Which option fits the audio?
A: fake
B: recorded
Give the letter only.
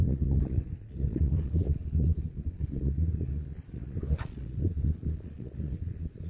A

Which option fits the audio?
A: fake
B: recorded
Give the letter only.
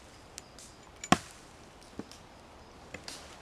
B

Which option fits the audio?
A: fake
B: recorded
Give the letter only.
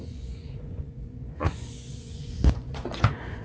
A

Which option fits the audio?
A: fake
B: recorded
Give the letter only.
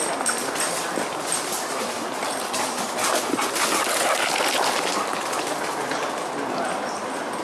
B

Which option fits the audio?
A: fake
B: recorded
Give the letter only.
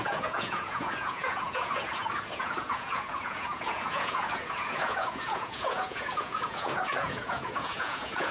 A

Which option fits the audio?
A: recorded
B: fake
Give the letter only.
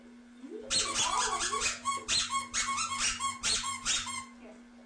A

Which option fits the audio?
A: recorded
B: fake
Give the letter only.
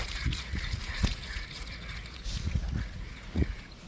B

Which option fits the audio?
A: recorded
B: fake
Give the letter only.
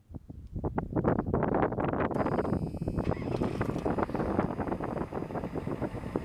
A